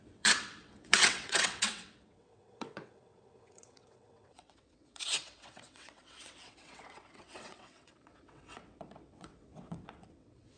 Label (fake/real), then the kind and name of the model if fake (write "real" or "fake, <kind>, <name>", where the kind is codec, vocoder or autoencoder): fake, vocoder, WaveNeXt